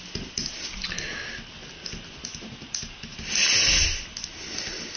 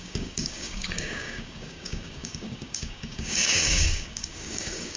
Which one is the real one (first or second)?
first